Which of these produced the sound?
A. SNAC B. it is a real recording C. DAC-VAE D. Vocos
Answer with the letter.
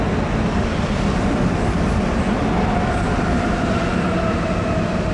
B